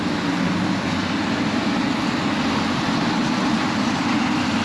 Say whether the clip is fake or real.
real